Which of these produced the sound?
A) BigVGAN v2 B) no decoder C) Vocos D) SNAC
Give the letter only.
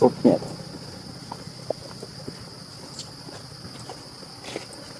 B